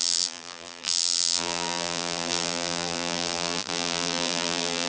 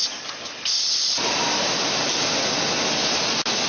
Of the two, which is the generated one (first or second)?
first